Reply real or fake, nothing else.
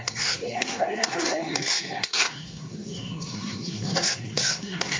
fake